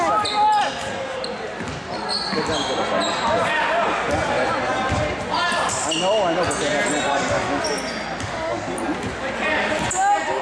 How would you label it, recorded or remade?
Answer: recorded